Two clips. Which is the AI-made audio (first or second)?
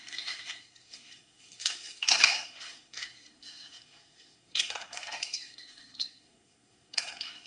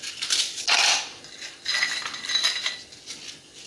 first